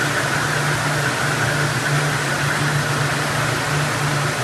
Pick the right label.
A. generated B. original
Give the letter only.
B